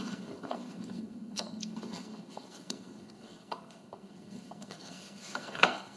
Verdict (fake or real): fake